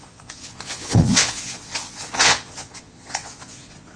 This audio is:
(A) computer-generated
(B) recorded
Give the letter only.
A